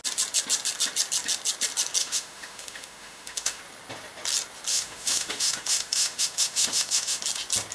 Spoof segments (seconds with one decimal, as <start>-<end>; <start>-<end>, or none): 2.0-3.6; 4.7-7.2